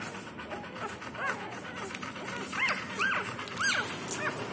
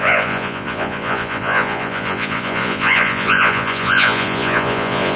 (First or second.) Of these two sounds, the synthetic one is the second